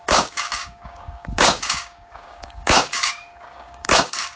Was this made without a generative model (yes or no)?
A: no